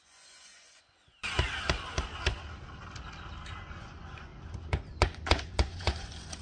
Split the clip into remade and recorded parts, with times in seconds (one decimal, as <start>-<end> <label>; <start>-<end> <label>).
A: 0.0-1.0 remade; 1.0-3.6 recorded; 3.6-4.3 remade; 4.3-4.9 recorded; 4.9-6.4 remade